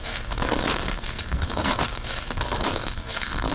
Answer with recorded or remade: remade